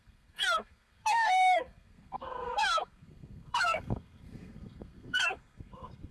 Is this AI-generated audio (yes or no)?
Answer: yes